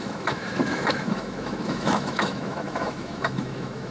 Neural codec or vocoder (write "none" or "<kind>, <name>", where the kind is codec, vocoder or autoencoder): autoencoder, DAC-VAE